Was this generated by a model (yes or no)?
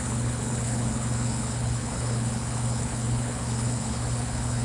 yes